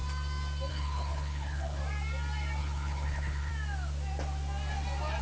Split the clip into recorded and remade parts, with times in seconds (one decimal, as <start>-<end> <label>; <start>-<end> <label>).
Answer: 0.0-0.7 recorded; 0.7-1.8 remade; 1.8-2.6 recorded; 2.6-3.5 remade; 3.5-5.2 recorded